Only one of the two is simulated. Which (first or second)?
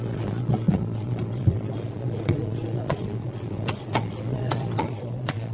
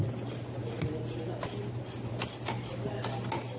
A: first